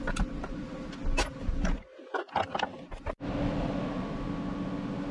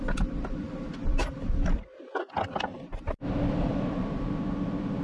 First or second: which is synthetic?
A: second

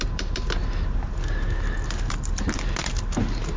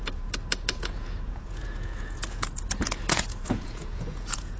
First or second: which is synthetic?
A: second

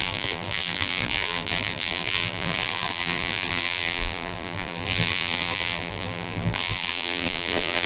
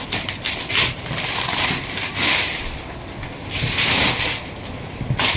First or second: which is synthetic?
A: first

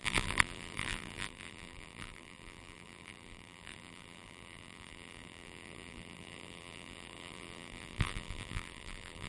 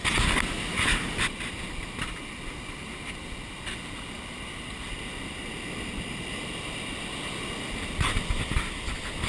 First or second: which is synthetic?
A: first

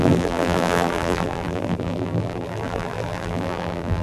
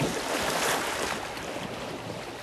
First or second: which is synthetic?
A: first